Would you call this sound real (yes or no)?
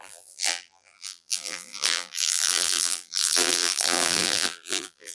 no